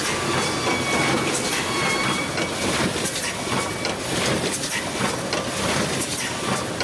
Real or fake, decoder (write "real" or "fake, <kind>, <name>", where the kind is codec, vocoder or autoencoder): real